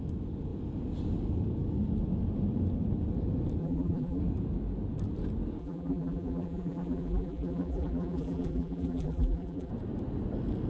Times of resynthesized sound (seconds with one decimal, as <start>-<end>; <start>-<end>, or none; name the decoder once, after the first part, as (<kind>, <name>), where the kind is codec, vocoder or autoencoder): 3.6-4.2 (vocoder, BigVGAN v2); 5.6-9.7